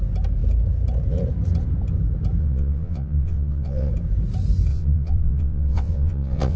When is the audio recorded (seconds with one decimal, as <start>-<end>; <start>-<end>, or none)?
0.0-2.4; 3.9-4.7